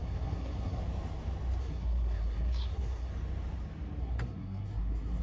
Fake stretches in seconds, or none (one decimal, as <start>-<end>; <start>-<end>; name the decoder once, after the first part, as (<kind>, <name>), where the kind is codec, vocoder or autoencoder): 0.0-0.8 (codec, SNAC); 1.6-3.1; 4.0-5.2